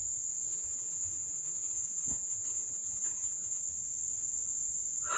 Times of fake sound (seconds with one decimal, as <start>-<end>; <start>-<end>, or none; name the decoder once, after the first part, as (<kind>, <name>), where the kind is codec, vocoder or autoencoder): 0.5-3.6 (vocoder, Vocos)